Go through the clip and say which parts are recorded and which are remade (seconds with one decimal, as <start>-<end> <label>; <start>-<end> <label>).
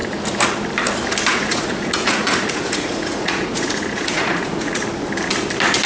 0.0-1.3 recorded; 1.3-4.8 remade; 4.8-5.9 recorded